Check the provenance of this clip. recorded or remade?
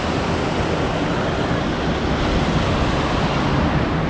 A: recorded